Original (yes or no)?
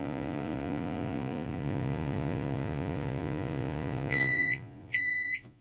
no